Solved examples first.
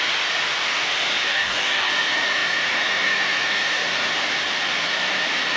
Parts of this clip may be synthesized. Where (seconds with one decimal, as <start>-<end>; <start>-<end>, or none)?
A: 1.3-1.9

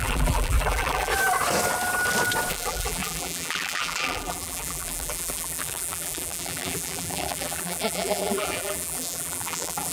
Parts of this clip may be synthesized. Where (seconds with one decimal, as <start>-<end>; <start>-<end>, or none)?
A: 0.0-1.1; 2.5-9.9

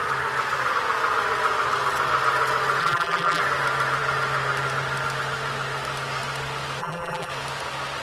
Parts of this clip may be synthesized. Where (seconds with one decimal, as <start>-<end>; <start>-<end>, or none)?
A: 2.8-3.4; 6.8-7.3

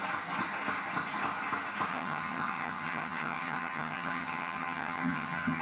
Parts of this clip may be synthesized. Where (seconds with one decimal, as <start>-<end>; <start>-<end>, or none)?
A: 1.9-5.6

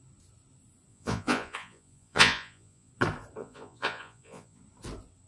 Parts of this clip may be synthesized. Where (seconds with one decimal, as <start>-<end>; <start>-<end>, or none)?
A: 0.9-2.9; 3.4-4.6